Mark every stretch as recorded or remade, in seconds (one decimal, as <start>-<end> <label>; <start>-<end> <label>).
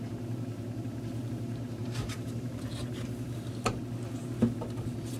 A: 0.0-1.8 recorded; 1.8-3.5 remade; 3.5-5.2 recorded